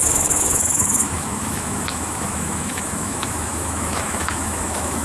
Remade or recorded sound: remade